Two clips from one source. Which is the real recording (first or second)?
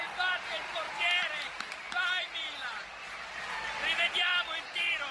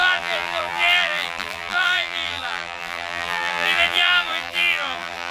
first